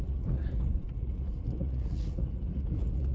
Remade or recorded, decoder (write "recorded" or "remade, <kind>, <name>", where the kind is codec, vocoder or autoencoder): remade, vocoder, Vocos